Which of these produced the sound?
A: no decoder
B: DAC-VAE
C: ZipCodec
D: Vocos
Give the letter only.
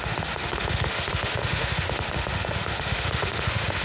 B